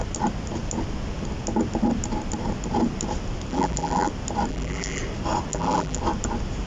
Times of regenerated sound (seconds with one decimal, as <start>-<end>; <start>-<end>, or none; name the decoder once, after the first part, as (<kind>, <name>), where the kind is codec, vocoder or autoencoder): 3.5-4.1 (vocoder, BigVGAN v2); 4.5-5.0; 5.5-6.0